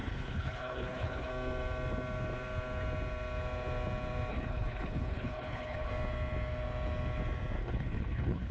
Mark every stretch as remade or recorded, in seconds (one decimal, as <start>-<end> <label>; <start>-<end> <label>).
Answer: 0.0-1.3 remade; 1.3-4.3 recorded; 4.3-5.9 remade; 5.9-7.6 recorded; 7.6-8.5 remade